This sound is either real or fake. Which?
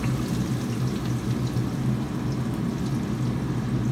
real